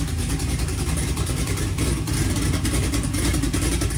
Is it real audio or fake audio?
fake